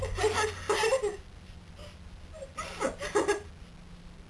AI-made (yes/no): no